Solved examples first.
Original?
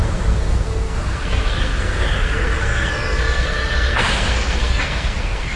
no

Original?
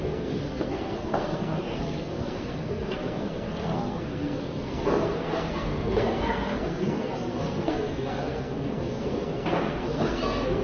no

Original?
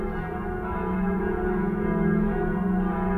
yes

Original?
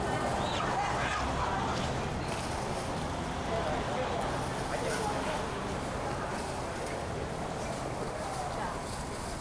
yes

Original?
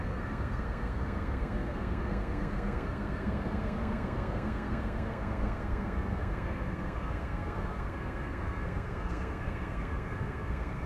no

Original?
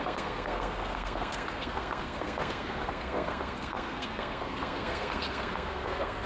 no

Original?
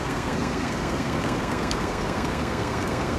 no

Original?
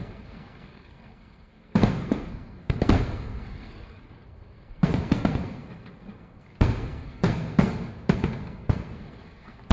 no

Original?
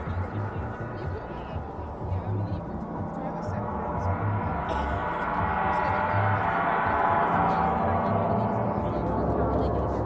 yes